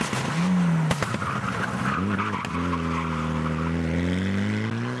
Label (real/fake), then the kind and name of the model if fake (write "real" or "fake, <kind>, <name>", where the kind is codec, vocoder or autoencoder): real